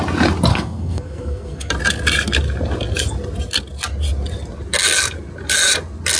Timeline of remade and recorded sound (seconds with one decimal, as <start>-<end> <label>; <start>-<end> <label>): 0.0-0.5 recorded; 0.5-1.7 remade; 1.7-6.2 recorded